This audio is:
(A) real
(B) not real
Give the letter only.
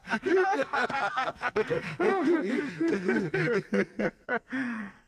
B